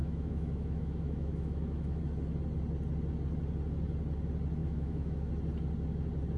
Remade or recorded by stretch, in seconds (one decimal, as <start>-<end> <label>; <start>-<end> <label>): 0.0-2.0 remade; 2.0-4.6 recorded; 4.6-5.3 remade; 5.3-6.4 recorded

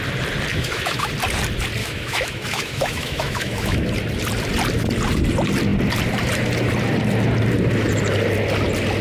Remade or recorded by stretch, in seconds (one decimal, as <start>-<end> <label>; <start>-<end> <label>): 0.0-0.5 recorded; 0.5-1.1 remade; 1.1-1.8 recorded; 1.8-3.9 remade; 3.9-9.0 recorded

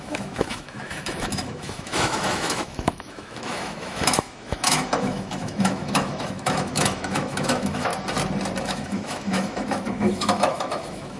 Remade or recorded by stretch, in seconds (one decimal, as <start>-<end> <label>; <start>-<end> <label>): 0.0-7.9 remade; 7.9-8.6 recorded; 8.6-11.2 remade

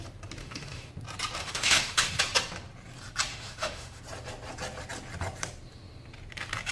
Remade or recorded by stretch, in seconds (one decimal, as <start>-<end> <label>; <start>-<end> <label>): 0.0-0.4 recorded; 0.4-0.9 remade; 0.9-1.4 recorded; 1.4-2.2 remade; 2.2-3.3 recorded; 3.3-4.0 remade; 4.0-6.7 recorded

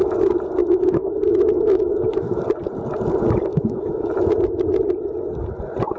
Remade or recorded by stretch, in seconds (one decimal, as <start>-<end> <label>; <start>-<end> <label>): 0.0-0.6 recorded; 0.6-2.4 remade; 2.4-3.5 recorded; 3.5-4.1 remade; 4.1-6.0 recorded